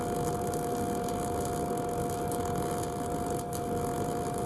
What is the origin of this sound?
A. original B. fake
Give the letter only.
A